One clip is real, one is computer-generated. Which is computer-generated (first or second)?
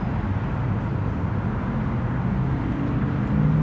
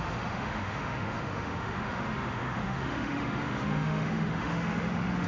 second